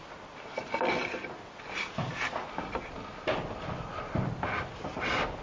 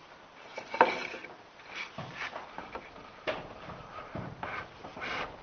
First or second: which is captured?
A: first